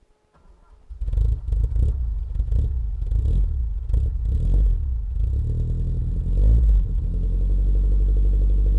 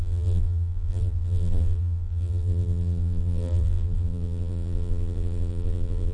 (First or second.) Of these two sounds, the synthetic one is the second